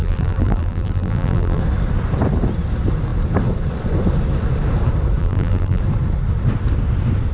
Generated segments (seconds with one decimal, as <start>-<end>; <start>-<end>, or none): 0.0-1.6; 5.2-5.8